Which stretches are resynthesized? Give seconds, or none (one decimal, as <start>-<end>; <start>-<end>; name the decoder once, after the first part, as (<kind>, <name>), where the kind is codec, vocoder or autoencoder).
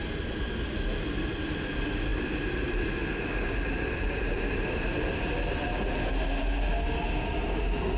none